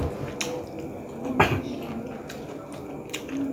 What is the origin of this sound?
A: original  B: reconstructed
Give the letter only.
A